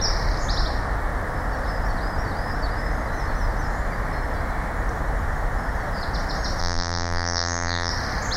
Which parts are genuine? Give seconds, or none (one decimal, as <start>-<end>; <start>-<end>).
0.0-6.6; 7.9-8.4